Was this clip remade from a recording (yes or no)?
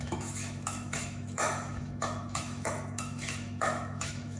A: yes